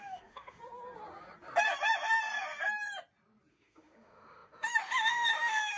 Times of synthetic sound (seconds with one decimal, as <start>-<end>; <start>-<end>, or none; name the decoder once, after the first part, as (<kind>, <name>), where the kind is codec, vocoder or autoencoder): 0.0-0.6 (autoencoder, DAC-VAE); 3.5-5.8